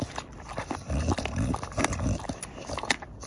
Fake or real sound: real